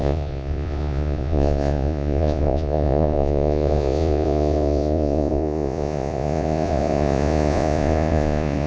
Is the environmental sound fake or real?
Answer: fake